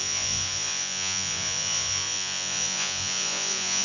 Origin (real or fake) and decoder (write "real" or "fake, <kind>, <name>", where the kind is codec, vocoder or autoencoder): fake, vocoder, Vocos